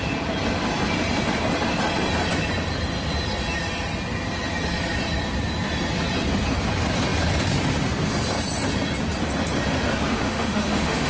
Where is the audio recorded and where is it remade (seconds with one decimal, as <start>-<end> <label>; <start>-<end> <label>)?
0.0-10.1 recorded; 10.1-11.1 remade